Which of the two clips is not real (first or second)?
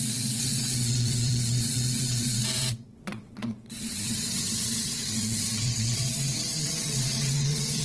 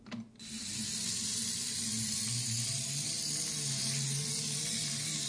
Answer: first